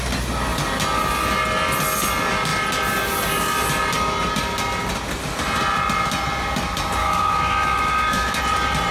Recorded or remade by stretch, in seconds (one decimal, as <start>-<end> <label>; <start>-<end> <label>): 0.0-7.0 recorded; 7.0-8.4 remade; 8.4-8.9 recorded